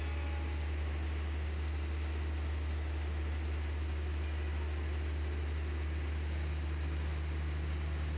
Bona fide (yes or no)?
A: yes